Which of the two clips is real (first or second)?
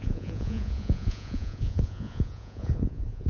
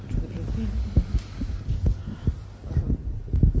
second